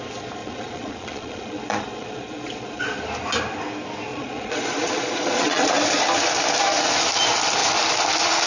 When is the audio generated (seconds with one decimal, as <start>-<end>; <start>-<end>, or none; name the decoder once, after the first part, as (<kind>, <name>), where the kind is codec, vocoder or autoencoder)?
0.4-2.8 (vocoder, Vocos); 4.1-5.7